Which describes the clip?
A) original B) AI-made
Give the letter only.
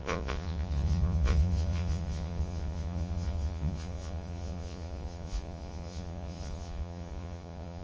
B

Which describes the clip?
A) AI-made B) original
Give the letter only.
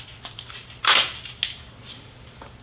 B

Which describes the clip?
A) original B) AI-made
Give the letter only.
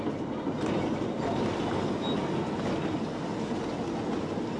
A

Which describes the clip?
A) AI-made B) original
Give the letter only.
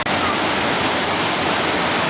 B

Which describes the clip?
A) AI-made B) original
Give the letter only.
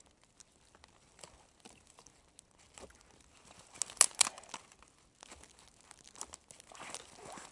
B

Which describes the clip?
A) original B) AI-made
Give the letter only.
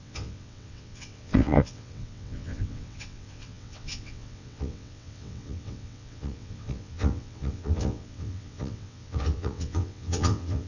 B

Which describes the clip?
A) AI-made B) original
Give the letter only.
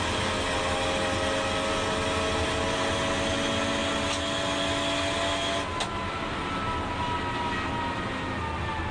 B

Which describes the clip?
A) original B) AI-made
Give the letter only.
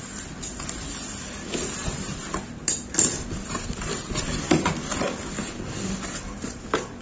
A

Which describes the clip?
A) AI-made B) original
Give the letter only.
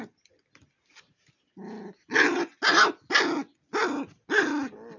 B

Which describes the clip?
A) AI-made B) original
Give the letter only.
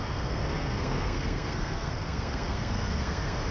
A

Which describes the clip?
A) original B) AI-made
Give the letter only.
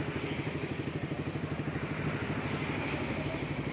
A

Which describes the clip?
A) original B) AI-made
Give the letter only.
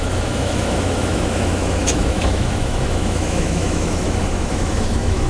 B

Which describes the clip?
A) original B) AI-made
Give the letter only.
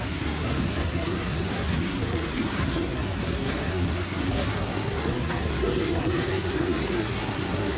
B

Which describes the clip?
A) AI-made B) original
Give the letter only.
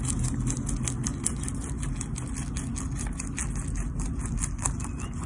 B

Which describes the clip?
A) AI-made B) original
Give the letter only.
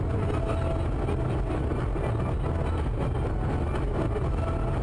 B